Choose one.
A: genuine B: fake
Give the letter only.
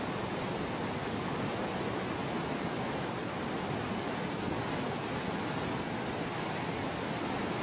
A